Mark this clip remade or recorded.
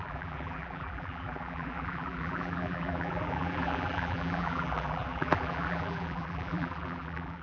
remade